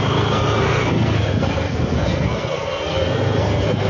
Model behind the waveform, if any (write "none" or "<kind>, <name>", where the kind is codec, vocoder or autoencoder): codec, SNAC